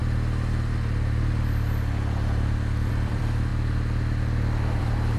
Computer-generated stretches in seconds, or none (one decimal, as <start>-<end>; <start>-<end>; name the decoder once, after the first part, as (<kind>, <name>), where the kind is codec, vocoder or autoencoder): 2.9-3.5 (vocoder, BigVGAN v2); 4.8-5.2

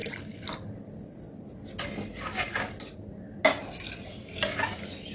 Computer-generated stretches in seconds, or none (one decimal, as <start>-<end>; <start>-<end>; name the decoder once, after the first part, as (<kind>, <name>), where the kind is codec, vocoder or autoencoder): none

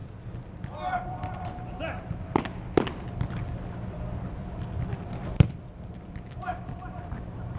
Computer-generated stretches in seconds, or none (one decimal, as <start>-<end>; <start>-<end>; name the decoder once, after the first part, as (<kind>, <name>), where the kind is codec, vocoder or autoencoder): 0.5-4.4 (vocoder, BigVGAN v2); 5.0-7.6

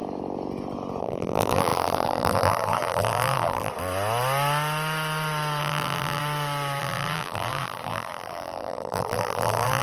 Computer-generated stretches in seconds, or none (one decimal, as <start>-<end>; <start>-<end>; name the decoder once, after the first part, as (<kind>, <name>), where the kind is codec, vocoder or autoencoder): 1.0-3.7 (vocoder, BigVGAN v2); 5.6-6.2; 6.8-9.8

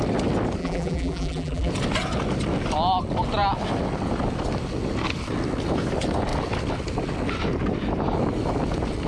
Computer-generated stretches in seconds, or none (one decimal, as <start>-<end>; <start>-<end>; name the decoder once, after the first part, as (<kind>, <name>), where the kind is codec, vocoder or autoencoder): 0.6-1.7 (vocoder, BigVGAN v2)